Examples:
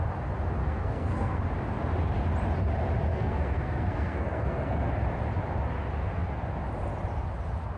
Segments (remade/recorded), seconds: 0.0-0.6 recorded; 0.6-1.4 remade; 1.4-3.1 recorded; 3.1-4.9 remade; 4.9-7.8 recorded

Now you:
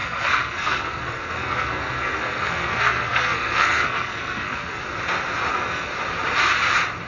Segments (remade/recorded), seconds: 0.0-4.8 remade; 4.8-5.5 recorded; 5.5-5.9 remade; 5.9-7.1 recorded

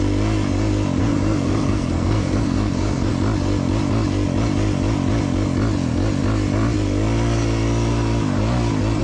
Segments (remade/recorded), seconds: 0.0-1.0 recorded; 1.0-3.1 remade; 3.1-9.0 recorded

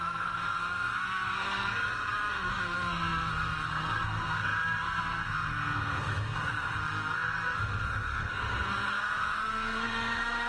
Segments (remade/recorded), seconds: 0.0-10.5 remade

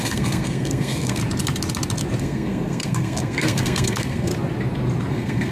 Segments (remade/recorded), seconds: 0.0-1.2 remade; 1.2-2.2 recorded; 2.2-4.3 remade; 4.3-5.1 recorded; 5.1-5.5 remade

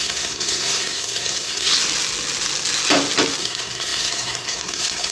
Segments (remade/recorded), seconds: 0.0-1.7 remade; 1.7-3.4 recorded; 3.4-5.1 remade

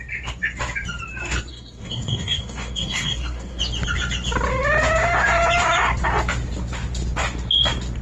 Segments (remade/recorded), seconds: 0.0-1.5 recorded; 1.5-3.6 remade; 3.6-8.0 recorded

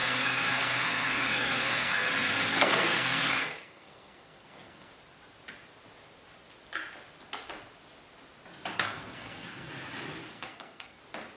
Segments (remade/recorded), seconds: 0.0-2.1 remade; 2.1-2.5 recorded; 2.5-4.9 remade; 4.9-8.7 recorded; 8.7-9.7 remade; 9.7-10.2 recorded; 10.2-11.0 remade; 11.0-11.4 recorded